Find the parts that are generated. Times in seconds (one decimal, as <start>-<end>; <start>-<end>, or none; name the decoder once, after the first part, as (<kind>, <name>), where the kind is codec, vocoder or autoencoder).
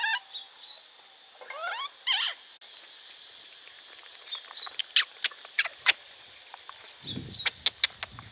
none